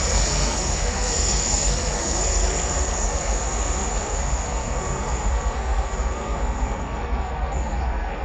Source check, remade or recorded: remade